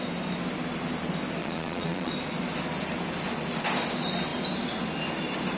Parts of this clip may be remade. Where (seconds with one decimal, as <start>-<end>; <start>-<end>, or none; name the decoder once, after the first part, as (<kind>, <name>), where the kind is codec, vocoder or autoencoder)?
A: 1.4-2.1 (vocoder, Vocos)